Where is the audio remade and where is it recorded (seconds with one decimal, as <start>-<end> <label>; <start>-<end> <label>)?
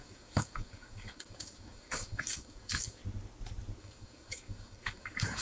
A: 0.0-3.0 remade; 3.0-3.8 recorded; 3.8-5.4 remade